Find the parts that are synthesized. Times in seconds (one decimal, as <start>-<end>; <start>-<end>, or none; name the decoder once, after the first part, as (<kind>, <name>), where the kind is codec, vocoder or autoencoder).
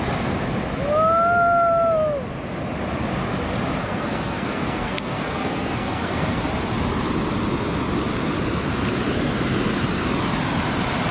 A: 3.8-6.4 (codec, SNAC)